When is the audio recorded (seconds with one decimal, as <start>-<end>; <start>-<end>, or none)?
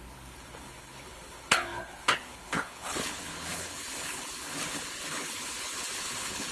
none